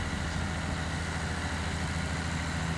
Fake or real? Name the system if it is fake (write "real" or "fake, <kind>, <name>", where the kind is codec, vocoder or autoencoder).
real